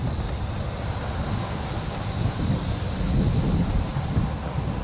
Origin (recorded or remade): recorded